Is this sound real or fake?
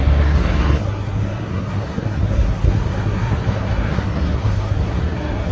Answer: fake